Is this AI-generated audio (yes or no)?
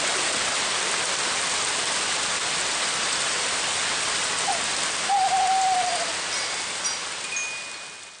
no